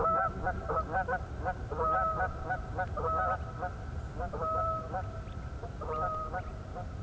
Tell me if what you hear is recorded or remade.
recorded